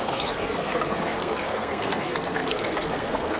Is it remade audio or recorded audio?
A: remade